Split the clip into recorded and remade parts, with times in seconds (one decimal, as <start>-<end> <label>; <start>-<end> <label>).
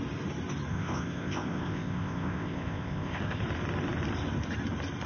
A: 0.0-0.7 recorded; 0.7-3.4 remade; 3.4-5.1 recorded